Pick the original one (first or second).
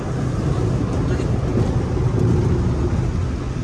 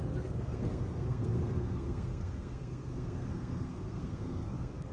first